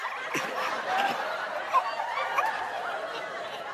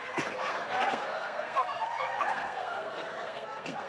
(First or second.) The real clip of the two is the first